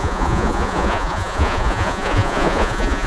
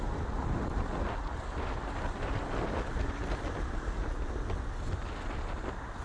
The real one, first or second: second